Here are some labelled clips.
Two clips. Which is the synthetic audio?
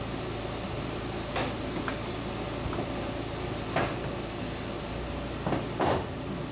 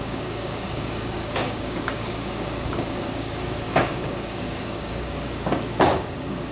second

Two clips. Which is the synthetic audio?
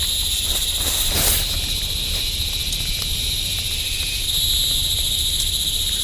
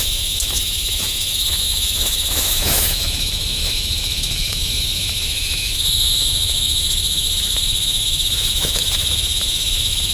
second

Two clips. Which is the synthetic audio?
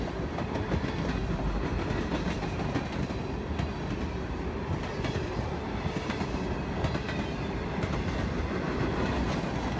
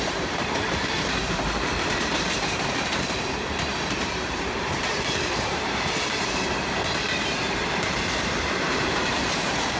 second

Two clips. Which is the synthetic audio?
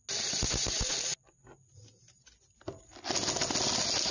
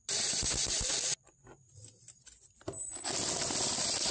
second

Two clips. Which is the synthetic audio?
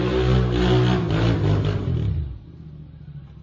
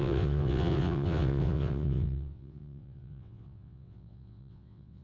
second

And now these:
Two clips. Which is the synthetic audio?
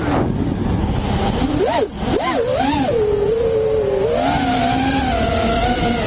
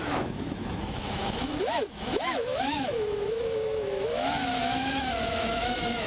second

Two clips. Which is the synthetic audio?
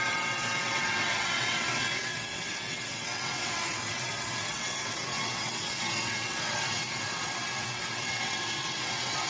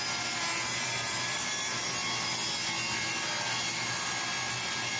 first